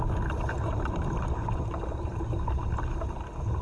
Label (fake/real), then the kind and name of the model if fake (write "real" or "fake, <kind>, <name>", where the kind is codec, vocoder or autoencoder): real